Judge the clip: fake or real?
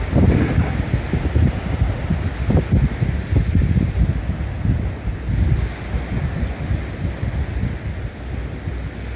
real